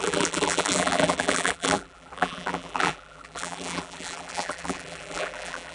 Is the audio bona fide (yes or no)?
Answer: no